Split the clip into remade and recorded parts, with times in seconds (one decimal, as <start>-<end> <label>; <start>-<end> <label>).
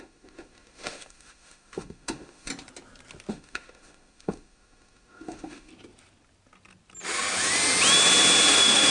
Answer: 0.0-2.5 remade; 2.5-3.3 recorded; 3.3-5.7 remade; 5.7-8.5 recorded; 8.5-8.9 remade